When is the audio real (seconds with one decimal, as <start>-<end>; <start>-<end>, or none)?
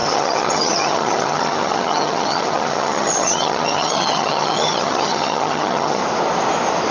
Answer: 6.0-6.9